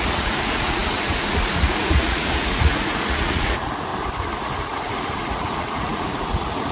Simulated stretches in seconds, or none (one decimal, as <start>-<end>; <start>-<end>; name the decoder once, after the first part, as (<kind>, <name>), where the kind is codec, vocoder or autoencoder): 0.0-3.9 (vocoder, Vocos); 4.4-6.7